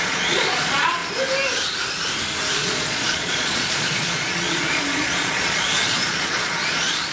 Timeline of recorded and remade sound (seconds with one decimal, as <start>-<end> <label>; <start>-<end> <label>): 0.0-1.0 remade; 1.0-2.5 recorded; 2.5-7.1 remade